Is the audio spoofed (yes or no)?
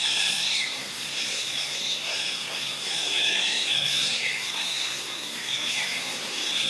yes